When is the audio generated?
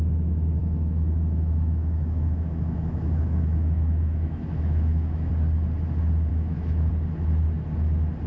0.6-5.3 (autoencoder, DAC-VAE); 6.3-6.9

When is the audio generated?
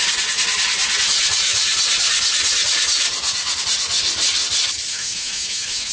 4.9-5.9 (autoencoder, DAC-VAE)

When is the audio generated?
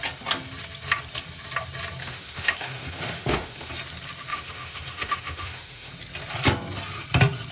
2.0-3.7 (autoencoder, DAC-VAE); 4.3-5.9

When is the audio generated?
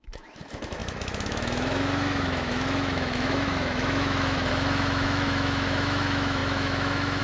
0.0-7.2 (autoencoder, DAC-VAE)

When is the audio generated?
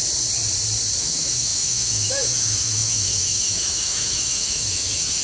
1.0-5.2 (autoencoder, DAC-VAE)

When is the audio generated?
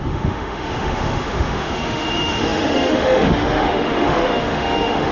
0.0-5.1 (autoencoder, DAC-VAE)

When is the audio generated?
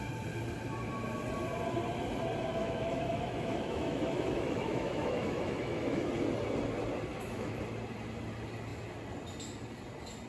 2.6-6.1 (autoencoder, DAC-VAE); 7.1-7.6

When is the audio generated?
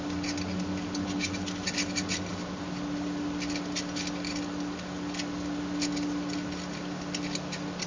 none